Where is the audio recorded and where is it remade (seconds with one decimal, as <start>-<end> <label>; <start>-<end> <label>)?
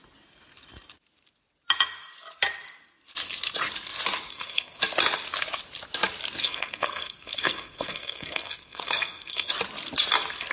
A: 0.0-4.3 recorded; 4.3-4.8 remade; 4.8-6.4 recorded; 6.4-9.5 remade; 9.5-10.5 recorded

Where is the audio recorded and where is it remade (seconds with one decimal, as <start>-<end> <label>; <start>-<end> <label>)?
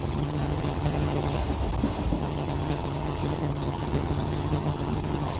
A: 0.0-1.4 remade; 1.4-2.2 recorded; 2.2-5.4 remade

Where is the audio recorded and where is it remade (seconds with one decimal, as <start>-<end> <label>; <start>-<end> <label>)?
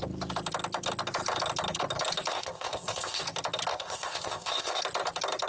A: 0.0-2.3 recorded; 2.3-3.2 remade; 3.2-3.7 recorded; 3.7-4.8 remade; 4.8-5.5 recorded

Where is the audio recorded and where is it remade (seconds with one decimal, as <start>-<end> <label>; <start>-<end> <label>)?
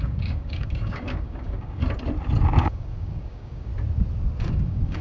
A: 0.0-1.8 remade; 1.8-2.6 recorded; 2.6-3.7 remade; 3.7-4.4 recorded; 4.4-5.0 remade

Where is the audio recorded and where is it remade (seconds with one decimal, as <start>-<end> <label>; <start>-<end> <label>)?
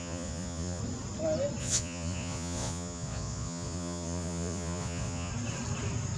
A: 0.0-0.8 remade; 0.8-1.6 recorded; 1.6-5.3 remade; 5.3-6.2 recorded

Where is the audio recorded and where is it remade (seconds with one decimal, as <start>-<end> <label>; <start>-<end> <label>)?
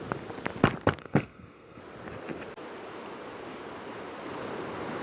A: 0.0-1.0 recorded; 1.0-1.8 remade; 1.8-5.0 recorded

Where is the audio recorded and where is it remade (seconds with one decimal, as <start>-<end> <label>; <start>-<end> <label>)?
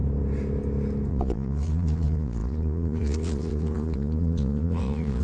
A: 0.0-1.1 recorded; 1.1-5.2 remade